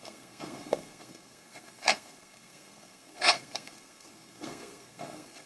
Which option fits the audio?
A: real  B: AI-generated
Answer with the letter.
B